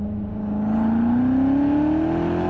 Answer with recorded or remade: recorded